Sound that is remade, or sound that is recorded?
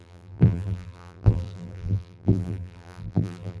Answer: remade